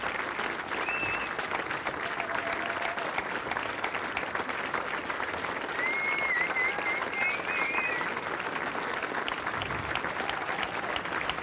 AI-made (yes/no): no